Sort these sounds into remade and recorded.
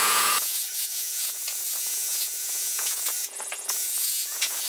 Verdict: remade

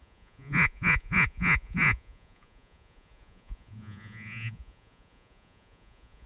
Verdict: remade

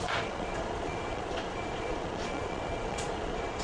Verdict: remade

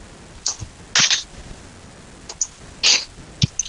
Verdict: recorded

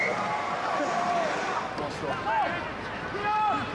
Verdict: recorded